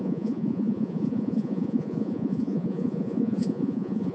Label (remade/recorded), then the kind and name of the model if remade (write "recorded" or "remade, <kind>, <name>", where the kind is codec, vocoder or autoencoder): remade, vocoder, Vocos